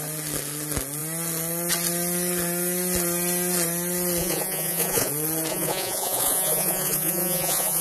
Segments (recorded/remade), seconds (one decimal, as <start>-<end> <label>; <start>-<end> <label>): 0.0-4.2 recorded; 4.2-5.1 remade; 5.1-5.5 recorded; 5.5-7.8 remade